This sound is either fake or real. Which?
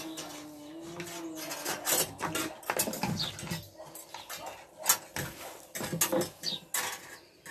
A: real